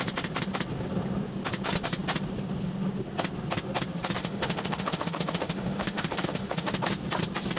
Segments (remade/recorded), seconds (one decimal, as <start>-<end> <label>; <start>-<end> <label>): 0.0-4.2 recorded; 4.2-6.7 remade; 6.7-7.6 recorded

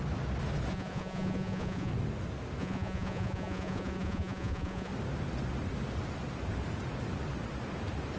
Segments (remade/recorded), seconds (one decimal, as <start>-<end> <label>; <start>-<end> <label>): 0.0-0.7 recorded; 0.7-1.9 remade; 1.9-2.6 recorded; 2.6-4.9 remade; 4.9-8.2 recorded

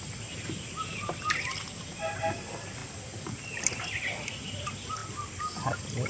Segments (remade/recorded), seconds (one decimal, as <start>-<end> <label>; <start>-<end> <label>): 0.0-6.1 recorded